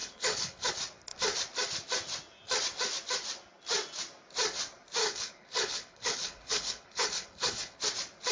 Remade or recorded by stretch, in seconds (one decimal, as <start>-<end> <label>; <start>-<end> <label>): 0.0-0.7 remade; 0.7-5.0 recorded; 5.0-7.8 remade; 7.8-8.3 recorded